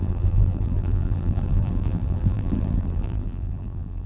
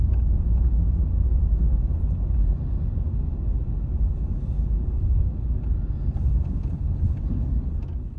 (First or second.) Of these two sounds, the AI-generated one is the first